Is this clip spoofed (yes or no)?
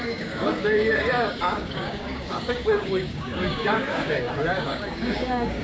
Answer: yes